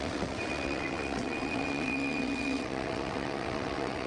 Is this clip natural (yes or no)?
no